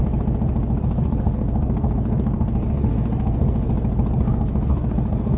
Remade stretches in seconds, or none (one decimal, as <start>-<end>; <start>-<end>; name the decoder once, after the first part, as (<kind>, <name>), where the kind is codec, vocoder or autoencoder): 0.8-3.7 (codec, SNAC); 4.3-5.4